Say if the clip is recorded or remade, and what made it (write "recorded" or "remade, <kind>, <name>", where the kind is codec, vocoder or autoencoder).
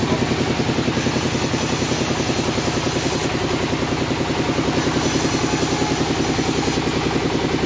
recorded